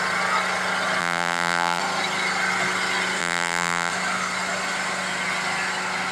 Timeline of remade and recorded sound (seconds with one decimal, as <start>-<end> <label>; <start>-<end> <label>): 0.0-1.0 recorded; 1.0-1.8 remade; 1.8-3.2 recorded; 3.2-3.9 remade; 3.9-6.1 recorded

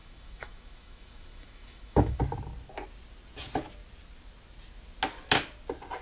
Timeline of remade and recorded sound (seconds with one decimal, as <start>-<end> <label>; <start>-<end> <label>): 0.0-2.2 remade; 2.2-6.0 recorded

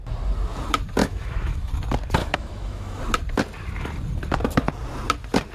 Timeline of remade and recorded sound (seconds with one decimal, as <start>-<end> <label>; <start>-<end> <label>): 0.0-1.0 recorded; 1.0-1.7 remade; 1.7-2.2 recorded; 2.2-3.0 remade; 3.0-5.5 recorded

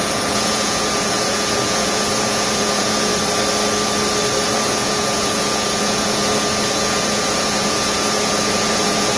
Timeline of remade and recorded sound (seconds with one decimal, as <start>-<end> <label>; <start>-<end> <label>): 0.0-3.1 remade; 3.1-4.4 recorded; 4.4-9.2 remade

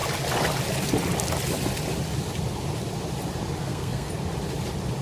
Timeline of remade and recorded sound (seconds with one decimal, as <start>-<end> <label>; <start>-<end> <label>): 0.0-3.6 recorded; 3.6-4.1 remade; 4.1-5.0 recorded

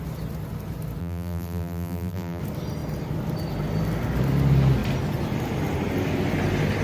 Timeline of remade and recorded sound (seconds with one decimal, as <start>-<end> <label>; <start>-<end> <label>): 0.0-1.0 recorded; 1.0-2.4 remade; 2.4-6.8 recorded

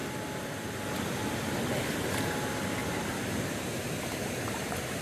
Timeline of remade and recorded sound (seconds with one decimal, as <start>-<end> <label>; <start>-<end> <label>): 0.0-1.8 recorded; 1.8-5.0 remade

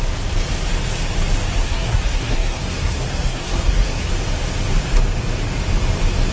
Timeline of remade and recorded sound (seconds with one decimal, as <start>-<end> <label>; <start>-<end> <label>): 0.0-1.6 recorded; 1.6-4.1 remade; 4.1-6.3 recorded